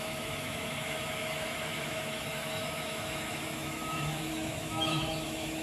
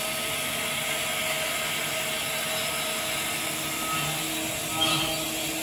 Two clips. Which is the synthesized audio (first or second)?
first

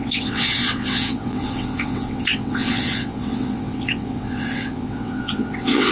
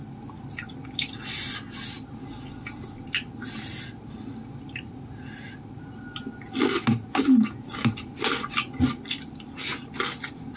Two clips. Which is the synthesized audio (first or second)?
first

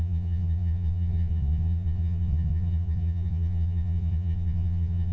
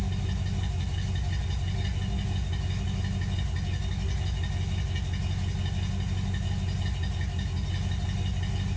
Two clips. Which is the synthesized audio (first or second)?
first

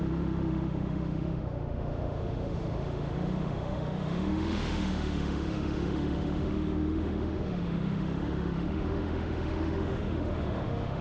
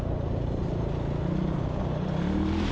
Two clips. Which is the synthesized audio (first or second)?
first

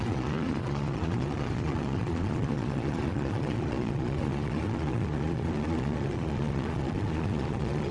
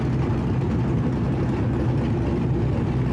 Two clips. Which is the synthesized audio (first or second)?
first